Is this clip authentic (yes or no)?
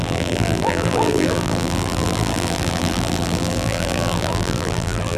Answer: no